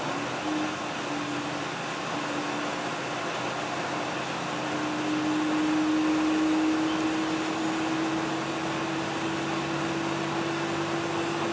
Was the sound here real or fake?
real